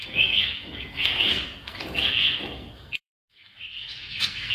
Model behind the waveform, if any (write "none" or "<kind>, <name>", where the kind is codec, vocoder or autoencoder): codec, SNAC